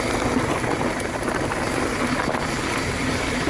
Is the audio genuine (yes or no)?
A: yes